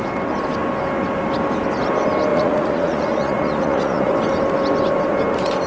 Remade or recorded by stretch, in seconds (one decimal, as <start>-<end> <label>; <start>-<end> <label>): 0.0-2.3 recorded; 2.3-4.1 remade; 4.1-5.7 recorded